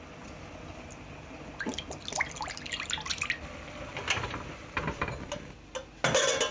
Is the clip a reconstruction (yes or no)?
no